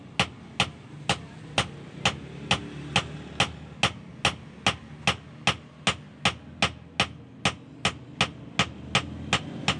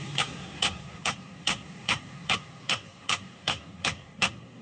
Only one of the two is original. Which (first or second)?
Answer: first